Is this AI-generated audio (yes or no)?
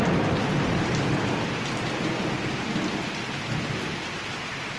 yes